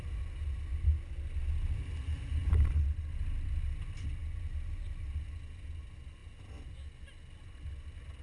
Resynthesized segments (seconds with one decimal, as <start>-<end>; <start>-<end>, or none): none